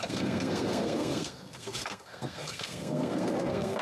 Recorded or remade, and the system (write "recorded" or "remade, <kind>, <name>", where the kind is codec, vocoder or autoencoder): remade, codec, SNAC